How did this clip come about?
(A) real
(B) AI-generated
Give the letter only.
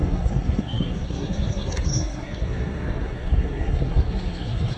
B